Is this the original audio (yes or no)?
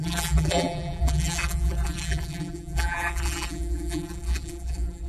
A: no